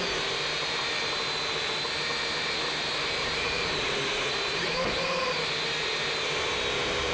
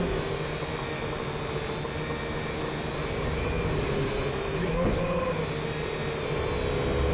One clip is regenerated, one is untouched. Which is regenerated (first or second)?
first